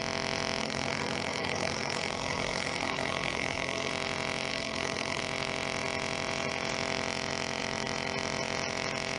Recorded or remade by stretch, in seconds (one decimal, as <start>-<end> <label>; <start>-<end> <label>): 0.0-0.6 recorded; 0.6-3.9 remade; 3.9-4.5 recorded; 4.5-5.2 remade; 5.2-9.2 recorded

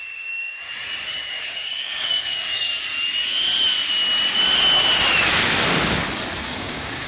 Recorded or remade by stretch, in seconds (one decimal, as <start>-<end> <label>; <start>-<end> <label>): 0.0-0.5 remade; 0.5-1.3 recorded; 1.3-2.7 remade; 2.7-6.4 recorded; 6.4-7.1 remade

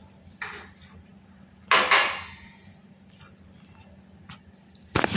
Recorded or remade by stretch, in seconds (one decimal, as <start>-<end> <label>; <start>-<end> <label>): 0.0-5.2 recorded